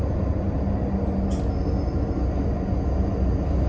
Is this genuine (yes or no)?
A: yes